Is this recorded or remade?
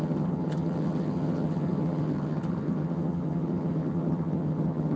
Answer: remade